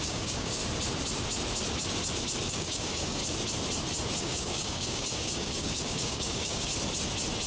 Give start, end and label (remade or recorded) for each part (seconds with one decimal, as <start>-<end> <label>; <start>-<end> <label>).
0.0-0.6 remade; 0.6-2.5 recorded; 2.5-3.2 remade; 3.2-4.2 recorded; 4.2-6.7 remade; 6.7-7.5 recorded